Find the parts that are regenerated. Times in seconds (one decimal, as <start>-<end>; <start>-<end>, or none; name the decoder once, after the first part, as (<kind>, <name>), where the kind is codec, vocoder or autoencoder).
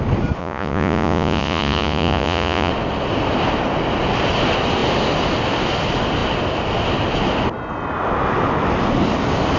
0.4-2.7 (vocoder, Vocos)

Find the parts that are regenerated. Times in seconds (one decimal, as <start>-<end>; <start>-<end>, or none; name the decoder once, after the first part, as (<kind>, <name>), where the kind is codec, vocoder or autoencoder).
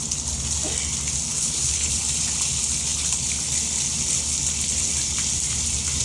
1.3-1.9 (codec, HILCodec)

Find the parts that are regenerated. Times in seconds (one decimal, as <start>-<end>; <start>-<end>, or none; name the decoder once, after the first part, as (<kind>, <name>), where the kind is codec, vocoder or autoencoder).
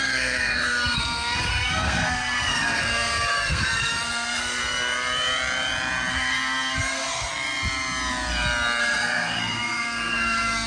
0.0-4.6 (codec, SNAC); 6.1-7.3; 8.8-10.7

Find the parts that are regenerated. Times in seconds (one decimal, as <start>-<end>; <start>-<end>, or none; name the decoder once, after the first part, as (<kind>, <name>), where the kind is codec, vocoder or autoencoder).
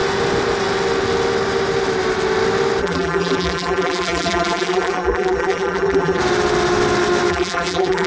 2.8-6.2 (vocoder, BigVGAN v2); 7.3-8.1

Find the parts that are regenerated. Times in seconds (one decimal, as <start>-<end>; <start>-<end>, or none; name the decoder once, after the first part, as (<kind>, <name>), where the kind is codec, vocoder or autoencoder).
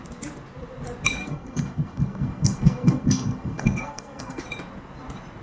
1.2-4.4 (codec, SNAC)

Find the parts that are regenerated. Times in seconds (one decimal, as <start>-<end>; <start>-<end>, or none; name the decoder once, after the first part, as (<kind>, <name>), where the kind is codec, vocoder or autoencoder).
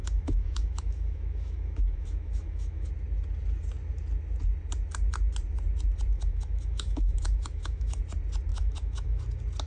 0.0-2.9 (autoencoder, DAC-VAE); 6.1-8.0; 8.5-9.2